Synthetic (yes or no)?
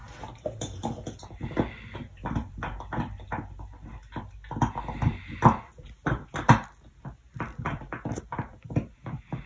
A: no